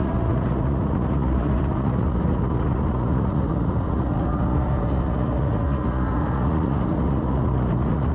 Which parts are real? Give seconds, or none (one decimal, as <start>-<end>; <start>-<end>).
none